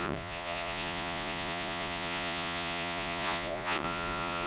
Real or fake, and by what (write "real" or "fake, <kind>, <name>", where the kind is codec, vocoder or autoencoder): fake, vocoder, Vocos